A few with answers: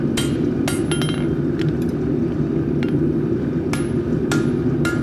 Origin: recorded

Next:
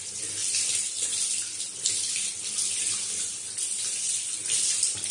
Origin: recorded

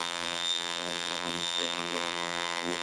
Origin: remade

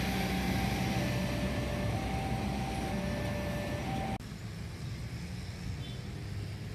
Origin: recorded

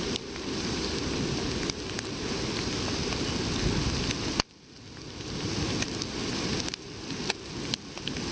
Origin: recorded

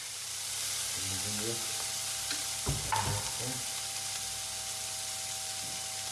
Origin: recorded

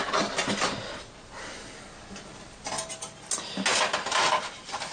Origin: recorded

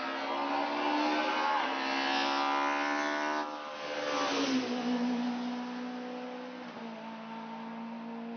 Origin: recorded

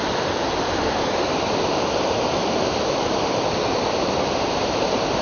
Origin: remade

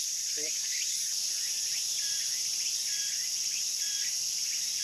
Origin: remade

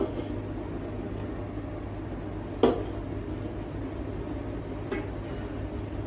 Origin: recorded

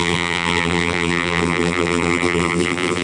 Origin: remade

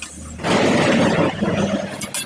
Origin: recorded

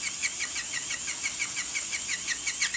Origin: recorded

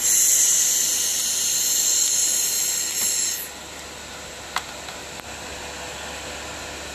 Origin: recorded